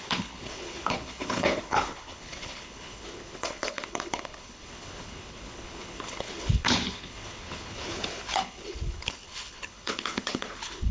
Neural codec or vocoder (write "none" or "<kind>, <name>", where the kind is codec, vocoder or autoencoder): codec, HILCodec